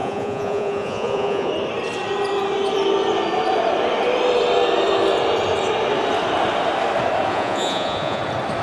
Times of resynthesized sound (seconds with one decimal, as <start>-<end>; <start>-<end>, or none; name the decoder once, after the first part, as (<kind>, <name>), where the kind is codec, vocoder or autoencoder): 0.0-1.5 (vocoder, Vocos); 7.3-8.2

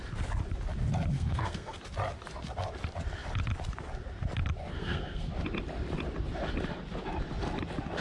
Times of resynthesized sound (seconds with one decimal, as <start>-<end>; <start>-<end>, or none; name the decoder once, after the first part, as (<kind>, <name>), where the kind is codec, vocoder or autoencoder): 1.1-1.8 (codec, SNAC); 4.8-5.3